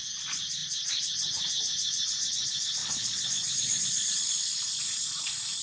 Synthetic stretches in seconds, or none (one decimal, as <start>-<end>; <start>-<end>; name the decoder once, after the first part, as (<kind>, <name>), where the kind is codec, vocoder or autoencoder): 2.8-5.0 (vocoder, Vocos)